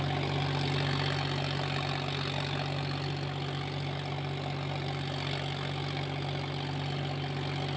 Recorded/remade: recorded